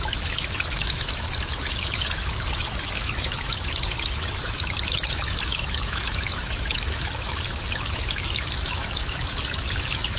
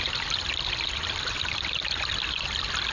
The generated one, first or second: first